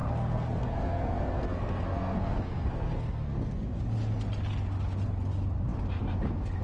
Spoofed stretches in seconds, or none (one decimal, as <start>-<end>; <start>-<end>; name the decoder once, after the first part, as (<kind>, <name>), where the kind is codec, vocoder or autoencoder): 0.0-3.8 (codec, SNAC)